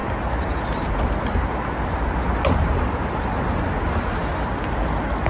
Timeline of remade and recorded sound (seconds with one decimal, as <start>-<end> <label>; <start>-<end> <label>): 0.0-5.3 recorded